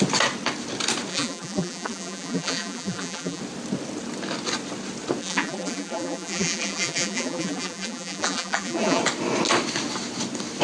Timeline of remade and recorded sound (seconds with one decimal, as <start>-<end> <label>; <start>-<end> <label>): 0.0-1.1 recorded; 1.1-3.4 remade; 3.4-5.2 recorded; 5.2-9.0 remade; 9.0-10.6 recorded